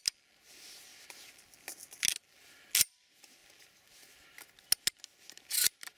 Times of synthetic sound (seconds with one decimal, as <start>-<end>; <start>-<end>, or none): none